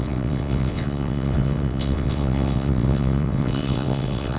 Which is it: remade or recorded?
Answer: remade